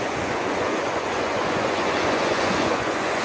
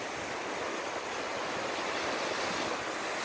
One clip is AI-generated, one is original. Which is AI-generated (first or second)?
first